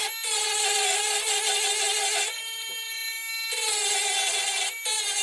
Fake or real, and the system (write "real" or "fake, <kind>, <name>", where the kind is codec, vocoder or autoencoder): real